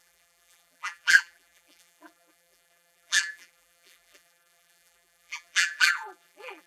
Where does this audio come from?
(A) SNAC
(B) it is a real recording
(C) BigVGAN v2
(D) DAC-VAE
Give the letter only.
C